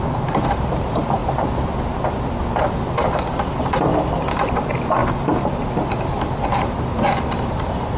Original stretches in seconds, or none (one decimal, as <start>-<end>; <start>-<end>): 1.2-2.7